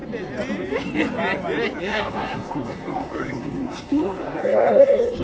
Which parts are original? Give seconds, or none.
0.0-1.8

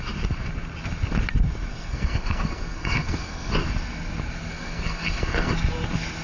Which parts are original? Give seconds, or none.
0.0-1.7; 3.5-4.5; 5.5-6.2

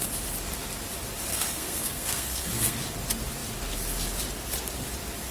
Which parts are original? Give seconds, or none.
0.0-1.3; 2.8-5.3

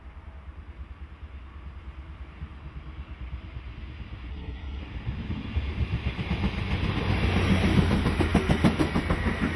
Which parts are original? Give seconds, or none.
0.0-4.3; 4.8-9.6